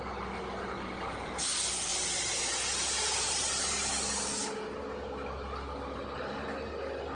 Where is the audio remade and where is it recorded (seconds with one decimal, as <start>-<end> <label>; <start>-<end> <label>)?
0.0-7.1 recorded